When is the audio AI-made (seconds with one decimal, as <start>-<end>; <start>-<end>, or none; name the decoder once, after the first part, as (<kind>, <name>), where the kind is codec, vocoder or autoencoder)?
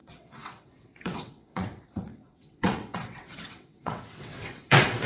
0.0-5.1 (vocoder, WaveNeXt)